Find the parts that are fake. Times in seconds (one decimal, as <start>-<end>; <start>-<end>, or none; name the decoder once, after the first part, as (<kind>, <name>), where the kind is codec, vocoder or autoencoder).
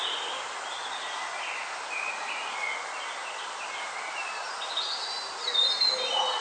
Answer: none